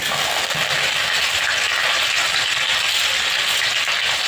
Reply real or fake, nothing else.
real